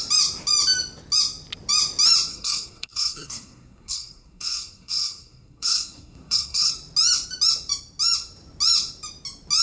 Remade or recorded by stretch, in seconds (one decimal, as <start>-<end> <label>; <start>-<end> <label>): 0.0-2.3 recorded; 2.3-6.7 remade; 6.7-9.6 recorded